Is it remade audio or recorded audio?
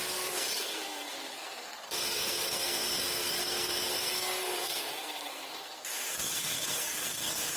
remade